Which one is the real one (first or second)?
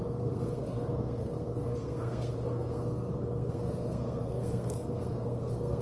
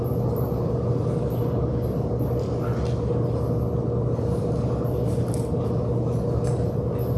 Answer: second